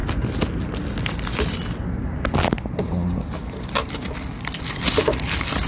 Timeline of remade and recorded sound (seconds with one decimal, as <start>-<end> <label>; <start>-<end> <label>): 0.0-5.7 recorded